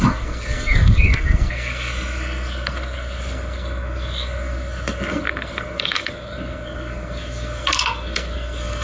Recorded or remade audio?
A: remade